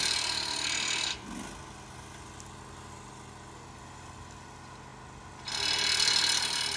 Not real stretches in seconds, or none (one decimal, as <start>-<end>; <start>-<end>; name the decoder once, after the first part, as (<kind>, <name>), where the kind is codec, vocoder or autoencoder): none

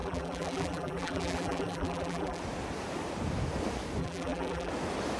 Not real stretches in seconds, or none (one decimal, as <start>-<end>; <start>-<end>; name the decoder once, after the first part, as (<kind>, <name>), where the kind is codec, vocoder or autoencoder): 0.0-2.4 (vocoder, BigVGAN v2); 4.0-4.7

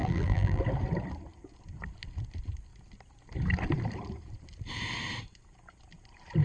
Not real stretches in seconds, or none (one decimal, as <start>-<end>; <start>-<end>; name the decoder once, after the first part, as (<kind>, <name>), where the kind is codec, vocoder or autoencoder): 0.0-0.6 (vocoder, BigVGAN v2)

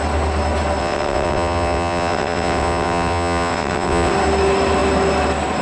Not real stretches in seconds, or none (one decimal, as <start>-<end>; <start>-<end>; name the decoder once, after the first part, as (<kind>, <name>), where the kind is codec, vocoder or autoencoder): 0.8-4.1 (vocoder, WaveNeXt)